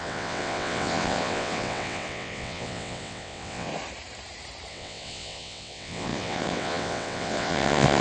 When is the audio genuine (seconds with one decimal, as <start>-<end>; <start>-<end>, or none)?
3.7-4.7